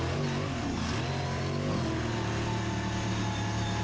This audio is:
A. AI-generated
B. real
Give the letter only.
B